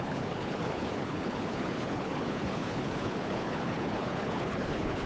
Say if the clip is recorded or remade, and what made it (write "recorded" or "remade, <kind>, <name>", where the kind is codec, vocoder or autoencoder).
remade, codec, HILCodec